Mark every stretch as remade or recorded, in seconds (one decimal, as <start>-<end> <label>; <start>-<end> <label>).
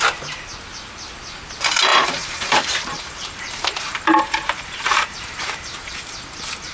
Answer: 0.0-1.9 recorded; 1.9-5.9 remade; 5.9-6.7 recorded